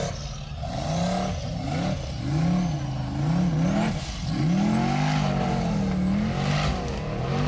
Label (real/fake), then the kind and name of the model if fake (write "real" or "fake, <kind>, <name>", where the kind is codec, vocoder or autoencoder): real